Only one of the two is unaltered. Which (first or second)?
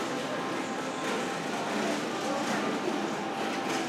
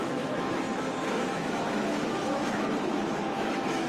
first